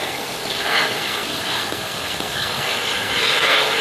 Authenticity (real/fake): fake